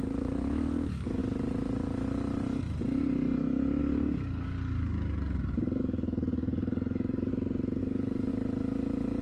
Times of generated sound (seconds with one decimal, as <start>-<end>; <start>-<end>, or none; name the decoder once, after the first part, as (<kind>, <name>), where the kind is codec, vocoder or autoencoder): 0.0-1.2 (codec, DAC); 3.8-7.3; 7.8-8.3